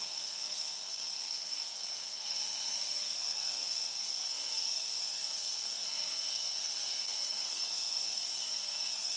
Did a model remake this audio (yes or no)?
yes